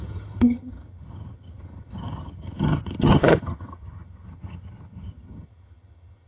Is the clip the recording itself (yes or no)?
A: no